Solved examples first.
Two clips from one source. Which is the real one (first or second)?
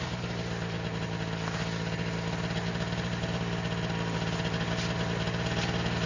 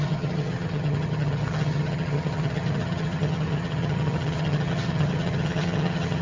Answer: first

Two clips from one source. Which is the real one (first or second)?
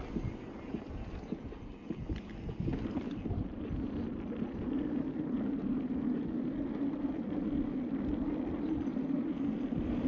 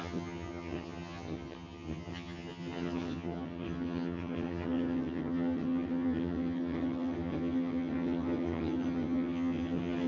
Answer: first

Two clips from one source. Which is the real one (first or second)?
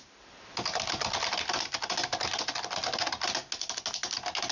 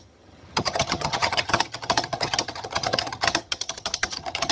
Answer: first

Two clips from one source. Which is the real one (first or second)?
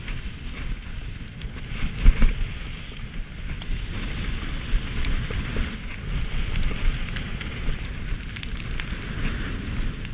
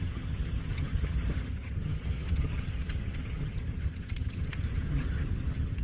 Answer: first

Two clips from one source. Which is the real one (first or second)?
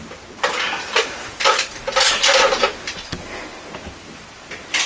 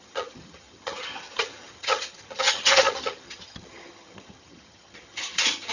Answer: first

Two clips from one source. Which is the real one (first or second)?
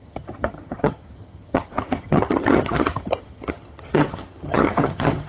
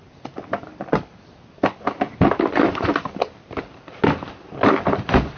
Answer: second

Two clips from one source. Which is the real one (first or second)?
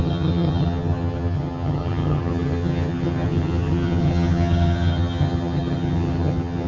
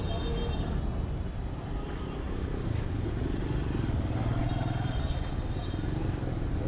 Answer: second